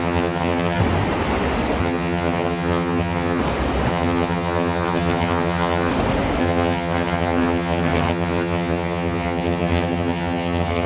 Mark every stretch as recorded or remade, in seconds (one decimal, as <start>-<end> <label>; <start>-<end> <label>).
0.0-0.8 remade; 0.8-1.8 recorded; 1.8-3.4 remade; 3.4-3.9 recorded; 3.9-5.9 remade; 5.9-6.4 recorded; 6.4-10.9 remade